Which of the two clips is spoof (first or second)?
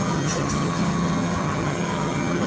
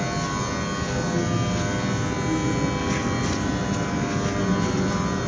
first